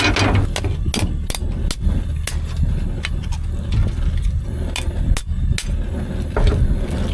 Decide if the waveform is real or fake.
real